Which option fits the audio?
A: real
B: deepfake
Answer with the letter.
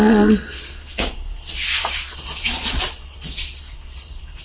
B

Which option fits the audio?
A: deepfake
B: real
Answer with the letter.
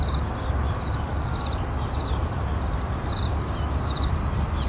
B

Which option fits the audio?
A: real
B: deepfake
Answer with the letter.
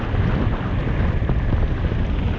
A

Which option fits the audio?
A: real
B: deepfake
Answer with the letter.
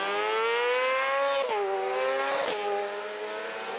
A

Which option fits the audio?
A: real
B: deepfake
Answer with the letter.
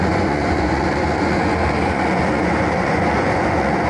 B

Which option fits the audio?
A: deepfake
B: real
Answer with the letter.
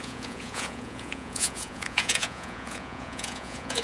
A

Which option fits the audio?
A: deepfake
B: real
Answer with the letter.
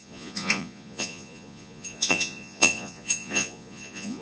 A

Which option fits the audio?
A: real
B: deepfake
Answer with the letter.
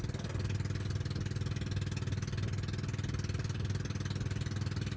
A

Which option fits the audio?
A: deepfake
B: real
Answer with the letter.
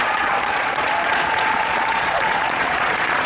A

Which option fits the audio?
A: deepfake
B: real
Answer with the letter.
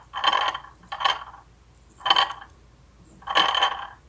B